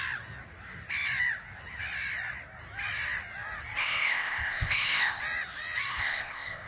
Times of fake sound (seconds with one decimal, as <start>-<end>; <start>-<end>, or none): 3.8-5.2; 5.9-6.7